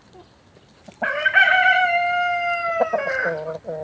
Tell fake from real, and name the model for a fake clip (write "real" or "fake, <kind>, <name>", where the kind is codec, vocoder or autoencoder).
real